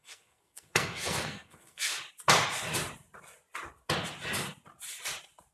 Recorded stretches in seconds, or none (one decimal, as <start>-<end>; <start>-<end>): 1.9-5.5

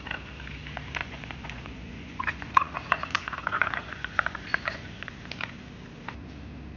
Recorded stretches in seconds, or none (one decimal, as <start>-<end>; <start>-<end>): 0.0-1.0; 5.1-6.8

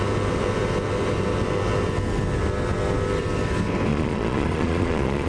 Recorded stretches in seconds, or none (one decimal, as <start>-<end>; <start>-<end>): 0.0-3.9